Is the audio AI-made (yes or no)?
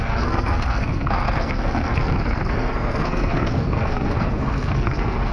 yes